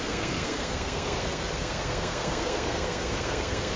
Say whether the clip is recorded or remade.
remade